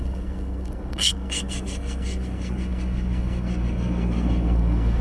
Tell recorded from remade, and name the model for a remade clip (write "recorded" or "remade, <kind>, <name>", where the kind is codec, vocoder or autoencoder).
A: remade, codec, SNAC